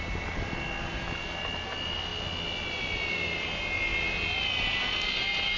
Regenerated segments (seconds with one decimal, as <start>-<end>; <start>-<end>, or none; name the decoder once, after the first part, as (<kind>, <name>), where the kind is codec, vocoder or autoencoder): none